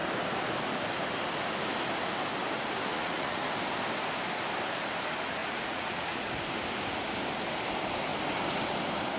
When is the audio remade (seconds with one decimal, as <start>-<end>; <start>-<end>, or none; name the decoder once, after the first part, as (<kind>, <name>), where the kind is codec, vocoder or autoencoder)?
2.9-3.5 (vocoder, Vocos); 5.4-6.3